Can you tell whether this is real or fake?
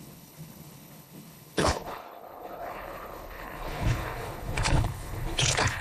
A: fake